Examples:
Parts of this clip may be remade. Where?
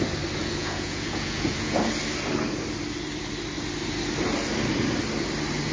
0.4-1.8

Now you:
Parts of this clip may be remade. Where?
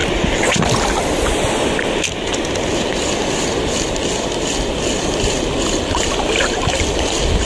none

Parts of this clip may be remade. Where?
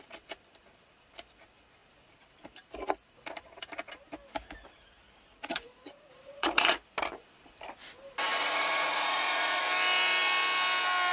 5.3-6.8; 8.3-9.6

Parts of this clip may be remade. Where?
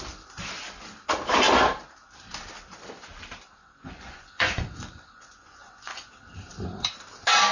3.6-6.1